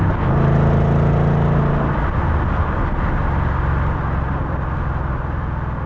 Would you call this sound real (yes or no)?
yes